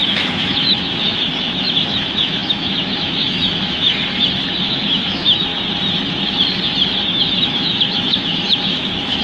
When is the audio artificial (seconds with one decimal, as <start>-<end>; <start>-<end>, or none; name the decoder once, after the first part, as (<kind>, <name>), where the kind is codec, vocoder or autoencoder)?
0.0-3.9 (autoencoder, DAC-VAE); 4.6-5.5; 7.0-9.2